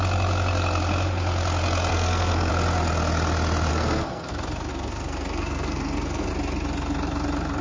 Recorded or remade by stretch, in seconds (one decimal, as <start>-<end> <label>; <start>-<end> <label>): 0.0-1.9 recorded; 1.9-2.5 remade; 2.5-3.7 recorded; 3.7-4.3 remade; 4.3-4.7 recorded; 4.7-6.3 remade; 6.3-7.6 recorded